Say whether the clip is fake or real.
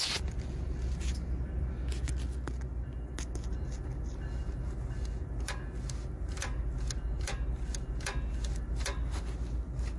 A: real